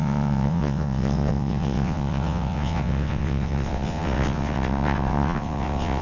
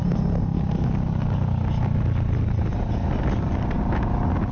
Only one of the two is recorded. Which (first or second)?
second